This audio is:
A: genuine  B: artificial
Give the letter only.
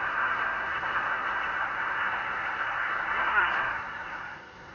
B